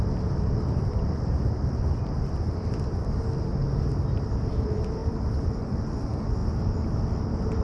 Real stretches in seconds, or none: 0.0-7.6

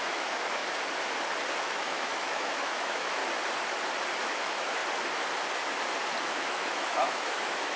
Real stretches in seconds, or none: 0.6-1.6; 3.2-4.2; 4.8-6.2

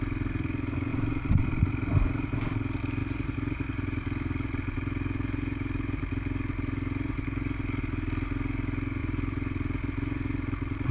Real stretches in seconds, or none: 0.0-3.0; 7.8-9.0

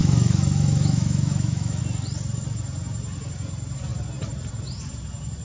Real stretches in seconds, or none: 1.8-5.4